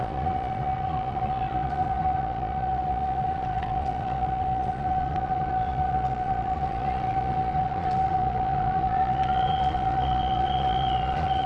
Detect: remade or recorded remade